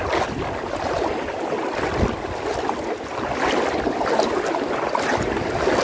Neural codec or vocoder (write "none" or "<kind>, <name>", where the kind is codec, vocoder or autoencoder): none